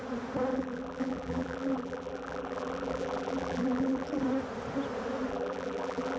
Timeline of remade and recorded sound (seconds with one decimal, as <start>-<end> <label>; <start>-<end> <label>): 0.0-0.5 recorded; 0.5-4.2 remade; 4.2-5.3 recorded; 5.3-6.2 remade